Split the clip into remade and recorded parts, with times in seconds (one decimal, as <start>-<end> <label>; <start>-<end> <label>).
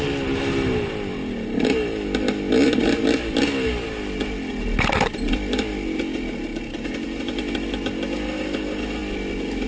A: 0.0-9.7 recorded